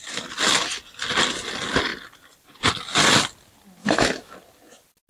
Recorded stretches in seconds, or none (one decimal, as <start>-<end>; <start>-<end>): 0.0-3.8; 4.3-5.1